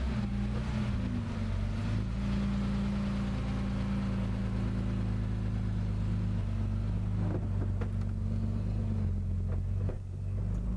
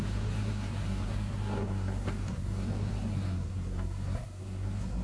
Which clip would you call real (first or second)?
first